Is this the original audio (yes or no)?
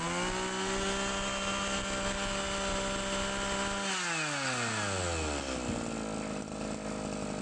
yes